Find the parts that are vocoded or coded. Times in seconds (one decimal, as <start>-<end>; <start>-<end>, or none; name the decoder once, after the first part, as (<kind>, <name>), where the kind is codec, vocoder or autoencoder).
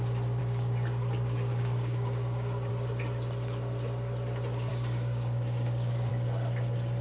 0.4-2.7 (codec, DAC); 4.7-6.1